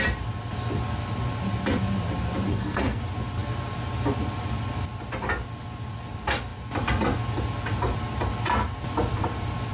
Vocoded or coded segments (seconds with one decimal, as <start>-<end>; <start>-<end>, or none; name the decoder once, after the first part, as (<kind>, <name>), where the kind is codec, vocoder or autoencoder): 2.5-3.0 (codec, SNAC)